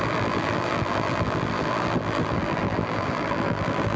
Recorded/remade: remade